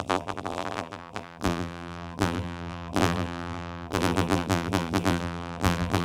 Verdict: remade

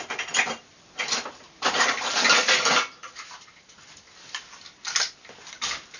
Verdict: recorded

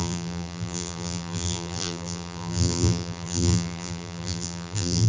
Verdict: remade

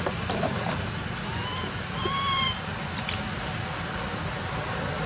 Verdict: recorded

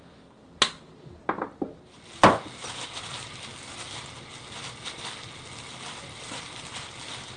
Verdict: recorded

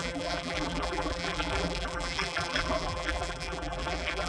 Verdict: remade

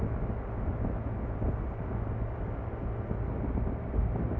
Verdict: recorded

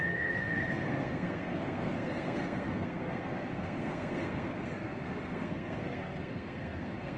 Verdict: remade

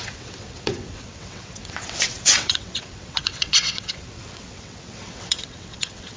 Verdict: remade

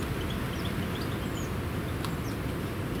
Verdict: recorded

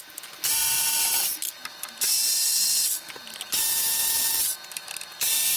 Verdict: recorded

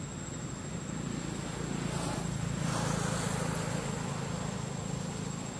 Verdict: recorded